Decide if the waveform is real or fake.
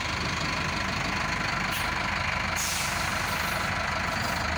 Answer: real